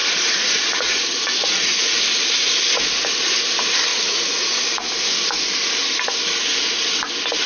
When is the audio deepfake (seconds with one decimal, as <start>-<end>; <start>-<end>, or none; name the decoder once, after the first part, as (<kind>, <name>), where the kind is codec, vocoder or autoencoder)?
0.0-2.0 (vocoder, Vocos); 3.9-5.1